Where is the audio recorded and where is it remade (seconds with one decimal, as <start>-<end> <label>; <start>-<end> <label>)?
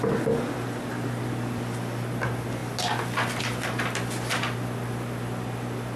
0.0-6.0 recorded